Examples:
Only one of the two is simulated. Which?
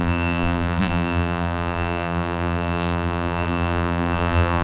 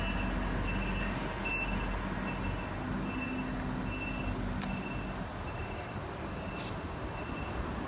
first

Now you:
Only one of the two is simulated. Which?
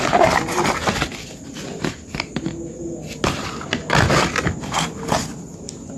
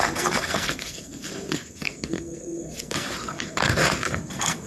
second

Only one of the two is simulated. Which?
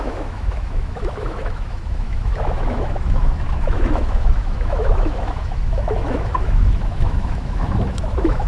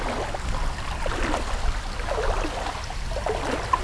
first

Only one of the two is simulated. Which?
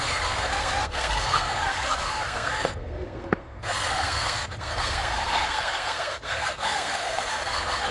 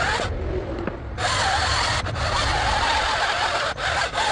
first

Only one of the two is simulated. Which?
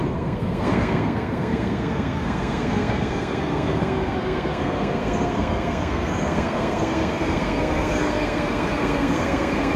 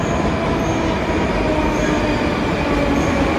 first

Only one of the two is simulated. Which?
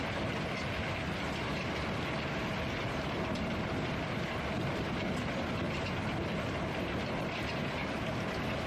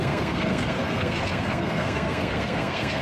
second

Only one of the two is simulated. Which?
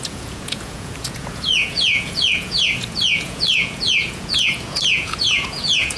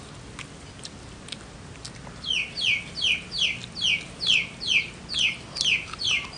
first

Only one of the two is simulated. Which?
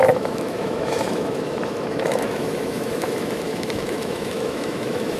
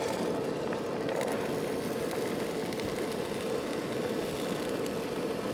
first